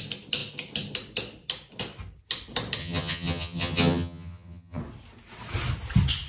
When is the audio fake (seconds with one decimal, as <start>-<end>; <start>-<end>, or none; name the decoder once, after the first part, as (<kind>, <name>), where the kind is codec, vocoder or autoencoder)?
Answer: 2.8-4.8 (vocoder, HiFi-GAN)